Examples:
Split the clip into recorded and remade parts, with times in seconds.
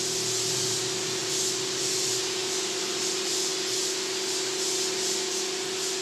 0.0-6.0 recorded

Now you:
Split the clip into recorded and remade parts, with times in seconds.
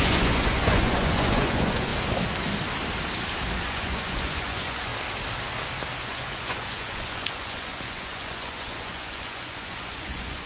0.0-1.9 remade; 1.9-3.6 recorded; 3.6-4.9 remade; 4.9-6.0 recorded; 6.0-10.5 remade